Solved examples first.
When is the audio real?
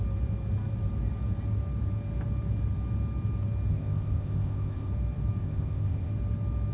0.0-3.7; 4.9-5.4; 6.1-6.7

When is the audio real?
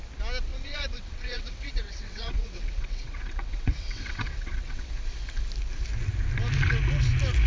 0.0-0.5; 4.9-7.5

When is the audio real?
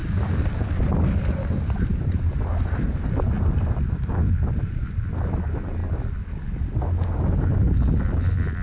0.9-2.5; 3.0-8.6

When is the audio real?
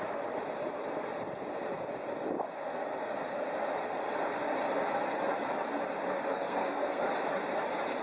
0.0-6.3; 7.0-8.0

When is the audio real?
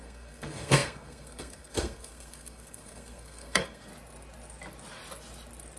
3.9-5.8